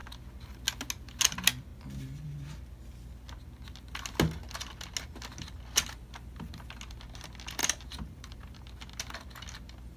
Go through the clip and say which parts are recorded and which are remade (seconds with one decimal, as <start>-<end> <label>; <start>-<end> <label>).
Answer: 0.0-7.6 recorded; 7.6-8.6 remade; 8.6-10.0 recorded